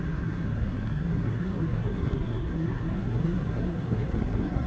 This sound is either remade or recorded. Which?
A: remade